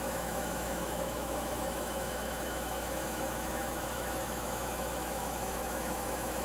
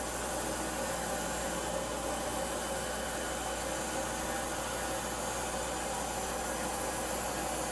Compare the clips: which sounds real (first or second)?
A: second